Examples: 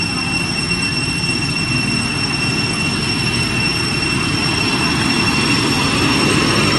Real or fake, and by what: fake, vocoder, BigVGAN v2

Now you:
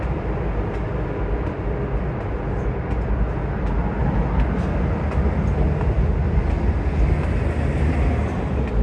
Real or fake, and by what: real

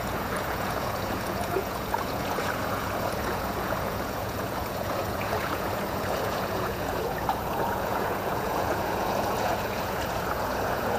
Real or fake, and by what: fake, vocoder, Vocos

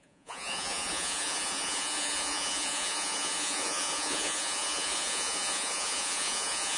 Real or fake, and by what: fake, vocoder, Vocos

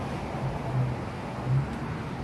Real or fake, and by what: real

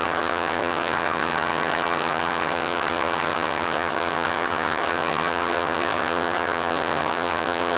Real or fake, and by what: fake, vocoder, HiFi-GAN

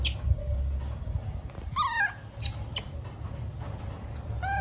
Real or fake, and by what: real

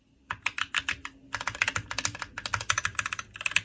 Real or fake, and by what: real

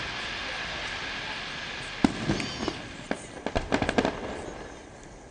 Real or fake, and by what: real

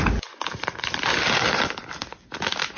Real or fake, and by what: real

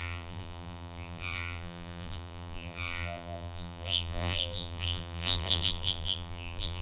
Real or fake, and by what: fake, vocoder, BigVGAN v2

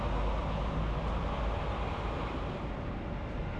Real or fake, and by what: real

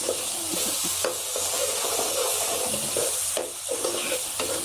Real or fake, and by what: real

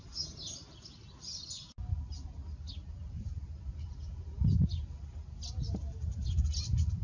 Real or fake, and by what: real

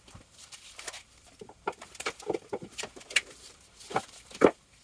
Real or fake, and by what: fake, vocoder, BigVGAN v2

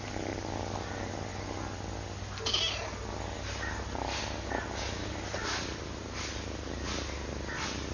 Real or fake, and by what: real